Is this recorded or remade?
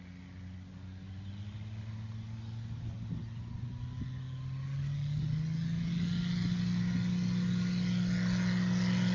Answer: recorded